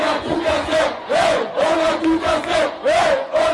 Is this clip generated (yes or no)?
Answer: yes